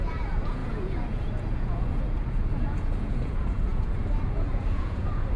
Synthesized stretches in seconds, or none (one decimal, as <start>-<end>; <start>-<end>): 0.0-5.4